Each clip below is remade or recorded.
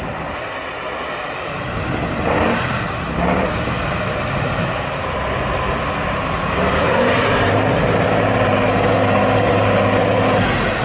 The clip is recorded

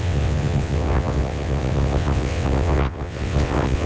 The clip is remade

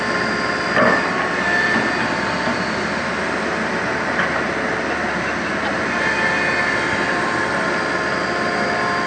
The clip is recorded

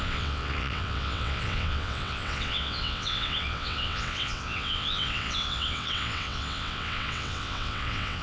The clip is remade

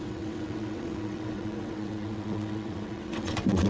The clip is remade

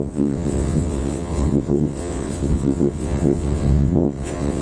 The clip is remade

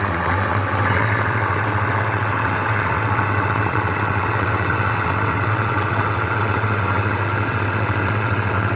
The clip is remade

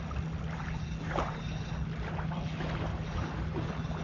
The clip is recorded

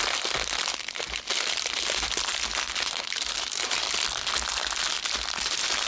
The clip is recorded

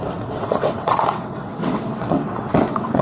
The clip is remade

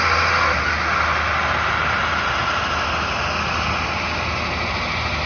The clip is recorded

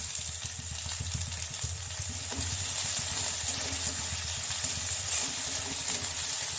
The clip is recorded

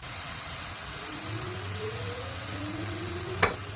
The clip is remade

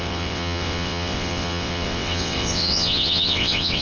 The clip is remade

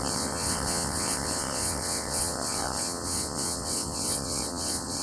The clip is remade